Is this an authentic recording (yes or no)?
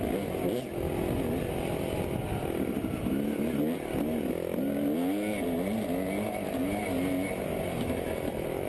yes